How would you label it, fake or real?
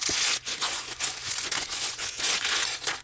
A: fake